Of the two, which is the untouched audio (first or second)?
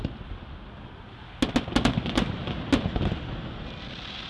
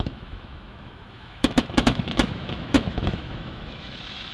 first